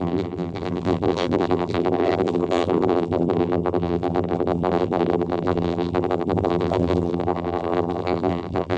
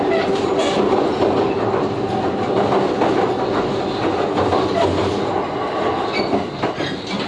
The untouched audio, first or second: second